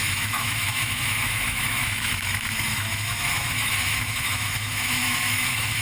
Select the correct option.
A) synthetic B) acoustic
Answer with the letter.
A